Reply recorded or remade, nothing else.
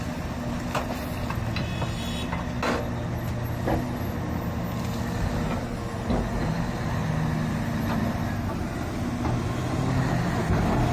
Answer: recorded